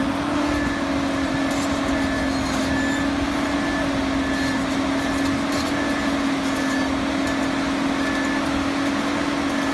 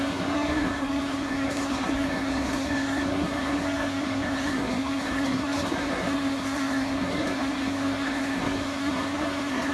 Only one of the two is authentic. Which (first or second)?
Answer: first